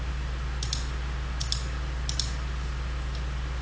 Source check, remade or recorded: recorded